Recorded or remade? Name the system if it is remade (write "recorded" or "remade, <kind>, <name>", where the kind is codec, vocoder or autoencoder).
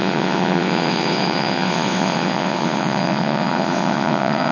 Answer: remade, vocoder, WaveNeXt